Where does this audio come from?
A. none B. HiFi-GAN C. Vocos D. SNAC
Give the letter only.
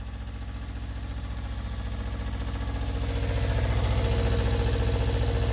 A